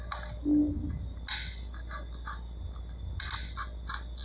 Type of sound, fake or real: real